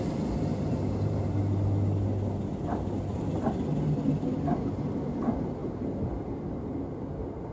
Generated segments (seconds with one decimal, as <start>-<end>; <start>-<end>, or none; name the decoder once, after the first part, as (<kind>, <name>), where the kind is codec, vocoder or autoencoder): 0.5-1.4 (vocoder, BigVGAN v2); 2.5-3.3; 5.6-6.1